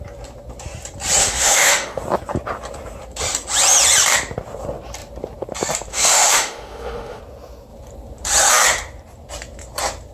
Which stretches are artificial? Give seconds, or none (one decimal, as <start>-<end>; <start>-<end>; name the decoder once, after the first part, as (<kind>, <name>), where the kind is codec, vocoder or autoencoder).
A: 1.2-2.0 (autoencoder, DAC-VAE); 5.9-7.2